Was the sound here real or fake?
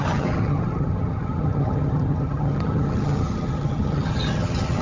fake